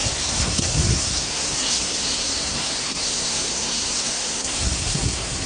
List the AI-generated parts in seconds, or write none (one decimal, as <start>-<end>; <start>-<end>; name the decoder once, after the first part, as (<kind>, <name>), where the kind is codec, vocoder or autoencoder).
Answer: 0.0-5.5 (codec, SNAC)